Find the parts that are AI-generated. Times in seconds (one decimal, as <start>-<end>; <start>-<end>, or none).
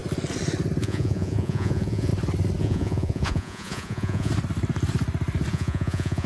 0.8-2.1; 2.6-4.3; 5.5-6.3